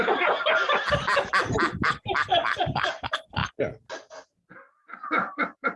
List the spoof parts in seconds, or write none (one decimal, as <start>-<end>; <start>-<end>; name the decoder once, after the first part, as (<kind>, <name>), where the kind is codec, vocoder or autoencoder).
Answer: 0.0-1.3 (vocoder, BigVGAN v2); 1.9-3.4; 5.0-5.8